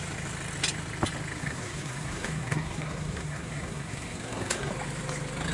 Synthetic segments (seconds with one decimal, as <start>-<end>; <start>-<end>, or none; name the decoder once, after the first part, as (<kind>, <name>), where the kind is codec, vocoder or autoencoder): 1.4-4.7 (codec, SNAC)